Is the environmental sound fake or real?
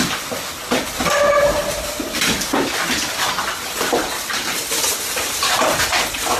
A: real